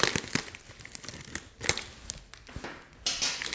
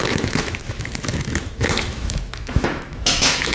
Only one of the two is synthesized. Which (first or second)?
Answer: second